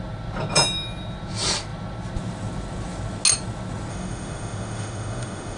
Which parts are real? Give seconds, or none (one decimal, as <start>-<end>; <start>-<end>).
0.0-3.9